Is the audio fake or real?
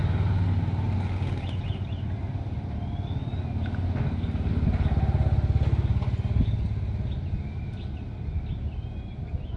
real